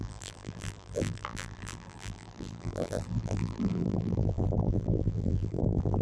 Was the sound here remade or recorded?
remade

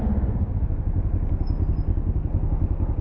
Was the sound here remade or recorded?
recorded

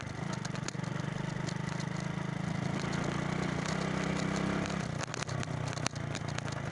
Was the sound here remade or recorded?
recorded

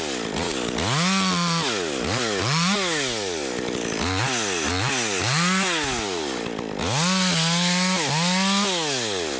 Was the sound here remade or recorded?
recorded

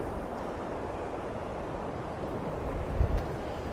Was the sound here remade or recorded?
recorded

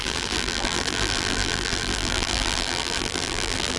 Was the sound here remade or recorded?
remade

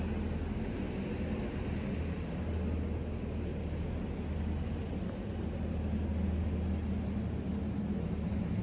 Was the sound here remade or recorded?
recorded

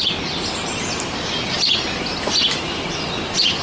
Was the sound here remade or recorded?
recorded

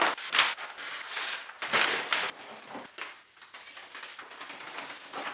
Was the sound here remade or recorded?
recorded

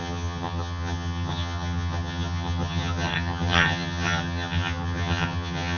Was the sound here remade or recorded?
remade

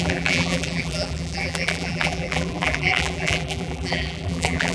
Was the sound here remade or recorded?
remade